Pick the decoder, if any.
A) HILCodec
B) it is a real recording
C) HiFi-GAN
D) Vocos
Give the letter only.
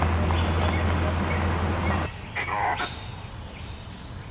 B